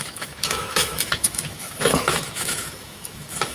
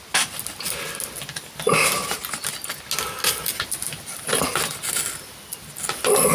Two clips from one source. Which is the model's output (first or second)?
first